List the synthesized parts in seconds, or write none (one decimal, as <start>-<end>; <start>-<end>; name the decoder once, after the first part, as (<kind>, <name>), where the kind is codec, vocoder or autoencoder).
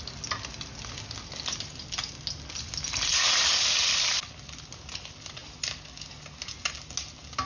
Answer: none